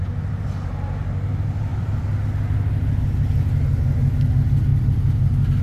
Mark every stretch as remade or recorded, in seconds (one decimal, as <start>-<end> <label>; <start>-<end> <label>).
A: 0.0-1.7 recorded; 1.7-2.2 remade; 2.2-4.7 recorded; 4.7-5.6 remade